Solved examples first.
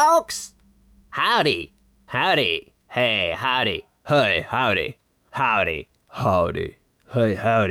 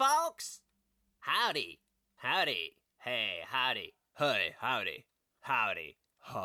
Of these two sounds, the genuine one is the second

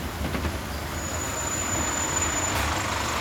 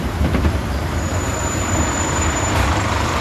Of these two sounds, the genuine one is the first